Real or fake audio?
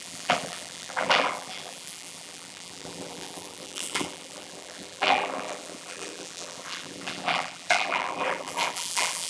fake